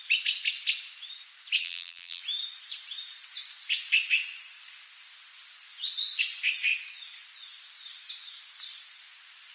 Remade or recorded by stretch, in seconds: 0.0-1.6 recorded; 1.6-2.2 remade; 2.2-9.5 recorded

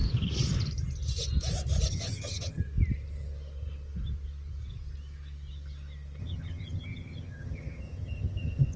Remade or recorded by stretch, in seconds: 0.0-1.9 recorded; 1.9-2.6 remade; 2.6-6.2 recorded; 6.2-8.8 remade

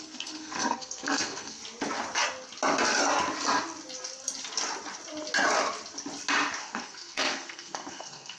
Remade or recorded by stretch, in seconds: 0.0-1.6 remade; 1.6-6.6 recorded; 6.6-8.4 remade

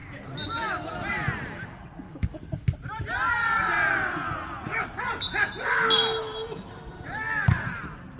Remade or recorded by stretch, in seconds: 0.0-8.2 recorded

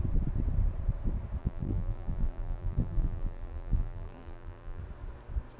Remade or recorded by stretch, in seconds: 0.0-1.4 recorded; 1.4-4.8 remade; 4.8-5.6 recorded

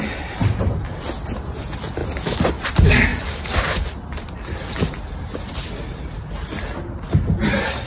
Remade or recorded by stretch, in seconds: 0.0-7.9 recorded

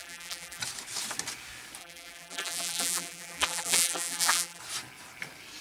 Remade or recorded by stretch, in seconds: 0.0-0.6 remade; 0.6-1.8 recorded; 1.8-4.6 remade; 4.6-5.6 recorded